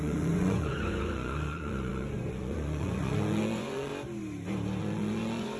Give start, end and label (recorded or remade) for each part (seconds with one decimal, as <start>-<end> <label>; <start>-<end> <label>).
0.0-3.9 remade; 3.9-4.8 recorded; 4.8-5.6 remade